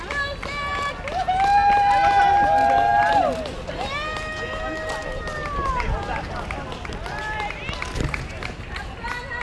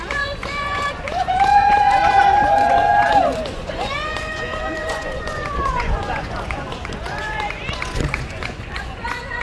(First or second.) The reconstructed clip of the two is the second